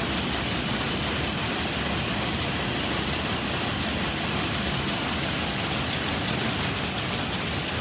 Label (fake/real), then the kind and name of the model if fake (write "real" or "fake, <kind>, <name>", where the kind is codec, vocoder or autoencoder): real